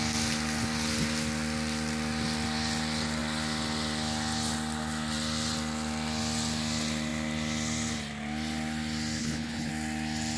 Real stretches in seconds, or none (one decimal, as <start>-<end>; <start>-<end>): 0.0-9.2; 9.7-10.4